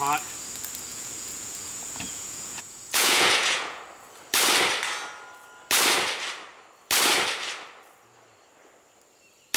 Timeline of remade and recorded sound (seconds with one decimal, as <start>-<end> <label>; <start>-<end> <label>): 0.0-0.9 recorded; 0.9-3.8 remade; 3.8-9.6 recorded